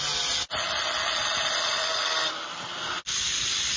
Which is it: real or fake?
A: real